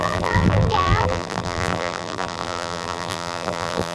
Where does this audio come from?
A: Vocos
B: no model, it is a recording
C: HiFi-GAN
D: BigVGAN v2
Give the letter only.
D